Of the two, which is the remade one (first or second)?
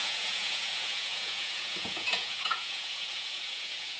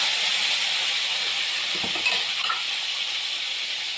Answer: first